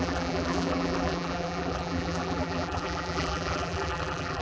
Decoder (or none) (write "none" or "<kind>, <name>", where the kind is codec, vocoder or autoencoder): vocoder, BigVGAN v2